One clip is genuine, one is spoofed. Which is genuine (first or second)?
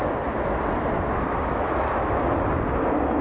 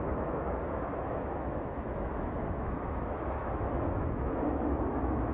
first